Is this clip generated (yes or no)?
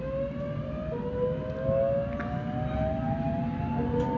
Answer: no